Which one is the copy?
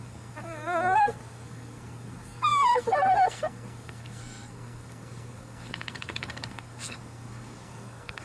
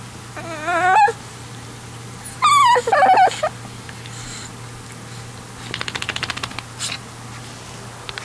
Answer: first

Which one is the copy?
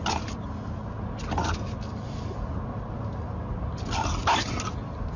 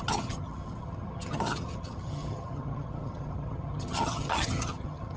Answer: second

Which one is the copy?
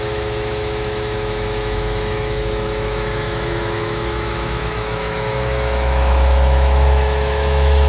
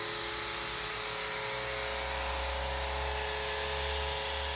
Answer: first